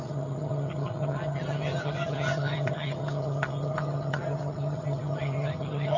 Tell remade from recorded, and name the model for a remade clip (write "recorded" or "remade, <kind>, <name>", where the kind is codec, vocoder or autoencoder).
remade, vocoder, HiFi-GAN